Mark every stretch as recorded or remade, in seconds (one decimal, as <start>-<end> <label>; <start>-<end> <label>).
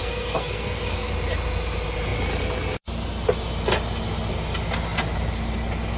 0.0-1.1 remade; 1.1-6.0 recorded